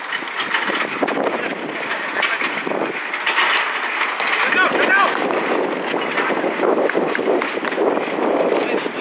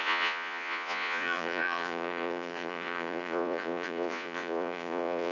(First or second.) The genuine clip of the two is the first